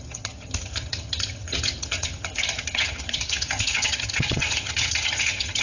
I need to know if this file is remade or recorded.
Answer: remade